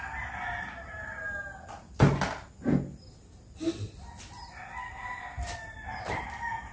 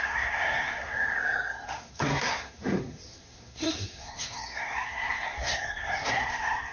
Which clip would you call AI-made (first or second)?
second